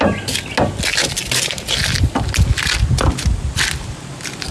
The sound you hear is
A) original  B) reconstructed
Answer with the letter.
A